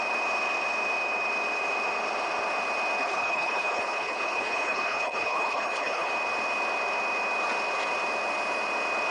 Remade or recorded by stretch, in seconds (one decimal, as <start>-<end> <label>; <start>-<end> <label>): 0.0-3.0 recorded; 3.0-6.1 remade; 6.1-9.1 recorded